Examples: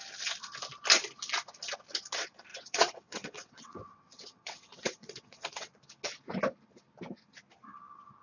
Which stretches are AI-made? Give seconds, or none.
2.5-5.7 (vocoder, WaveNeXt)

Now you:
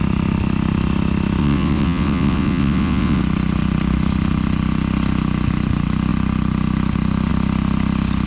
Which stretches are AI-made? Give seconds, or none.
1.4-3.2 (vocoder, WaveNeXt)

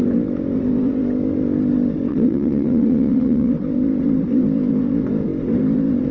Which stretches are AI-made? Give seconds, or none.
2.1-3.5 (vocoder, WaveNeXt)

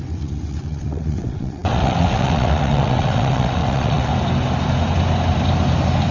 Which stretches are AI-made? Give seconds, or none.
0.0-4.1 (vocoder, WaveNeXt)

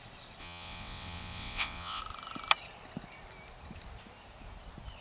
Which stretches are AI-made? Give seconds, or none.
0.4-2.0 (vocoder, WaveNeXt)

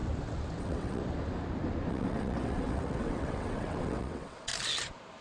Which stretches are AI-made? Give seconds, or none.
0.6-1.0 (vocoder, WaveNeXt); 1.9-4.5

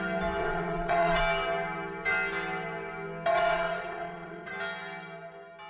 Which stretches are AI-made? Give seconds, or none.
0.4-1.2 (vocoder, WaveNeXt); 3.3-4.5